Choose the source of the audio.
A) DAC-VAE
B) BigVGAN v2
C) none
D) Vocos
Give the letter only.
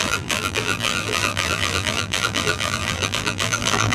B